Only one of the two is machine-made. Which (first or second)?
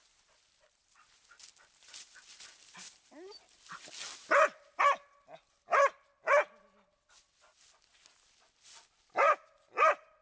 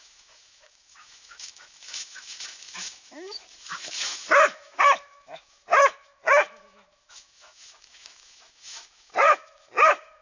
second